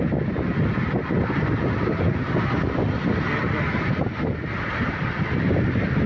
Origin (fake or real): real